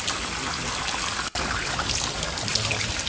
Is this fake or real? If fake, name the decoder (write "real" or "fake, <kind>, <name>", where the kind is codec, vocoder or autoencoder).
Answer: real